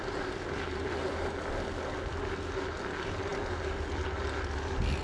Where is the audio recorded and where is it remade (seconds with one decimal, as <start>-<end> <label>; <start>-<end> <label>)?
0.0-1.5 remade; 1.5-5.0 recorded